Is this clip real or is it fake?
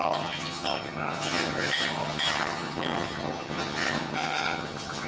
fake